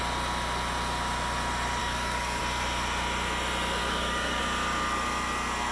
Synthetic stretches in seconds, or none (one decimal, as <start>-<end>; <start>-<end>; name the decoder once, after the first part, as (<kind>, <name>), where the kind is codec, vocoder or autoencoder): 1.8-2.4 (codec, DAC); 3.8-4.4